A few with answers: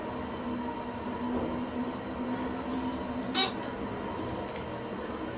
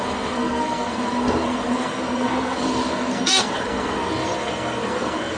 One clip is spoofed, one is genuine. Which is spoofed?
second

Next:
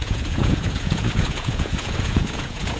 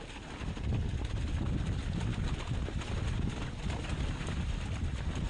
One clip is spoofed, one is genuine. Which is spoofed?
first